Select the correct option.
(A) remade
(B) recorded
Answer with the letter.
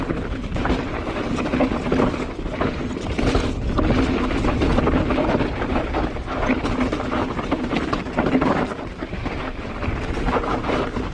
A